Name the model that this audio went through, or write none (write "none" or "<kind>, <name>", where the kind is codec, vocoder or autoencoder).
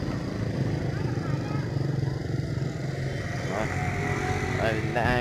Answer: none